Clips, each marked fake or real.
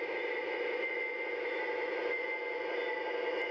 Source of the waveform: real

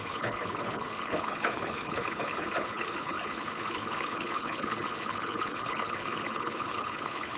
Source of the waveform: fake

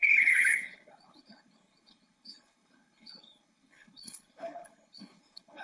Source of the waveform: fake